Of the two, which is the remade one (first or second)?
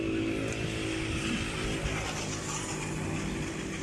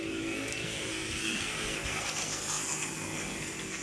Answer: second